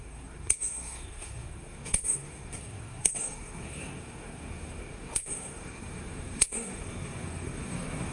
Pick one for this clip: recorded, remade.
remade